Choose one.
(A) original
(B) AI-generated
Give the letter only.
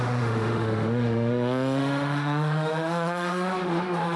B